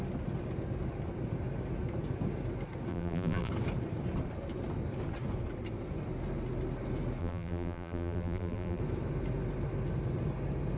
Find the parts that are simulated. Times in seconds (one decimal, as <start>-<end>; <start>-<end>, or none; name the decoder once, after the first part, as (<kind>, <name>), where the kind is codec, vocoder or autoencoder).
2.9-3.5 (vocoder, BigVGAN v2); 7.2-8.8